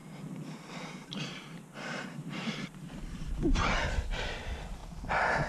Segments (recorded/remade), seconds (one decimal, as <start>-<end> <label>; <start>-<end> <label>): 0.0-3.3 remade; 3.3-5.5 recorded